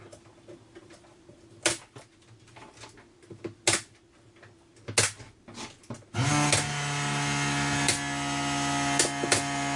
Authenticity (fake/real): real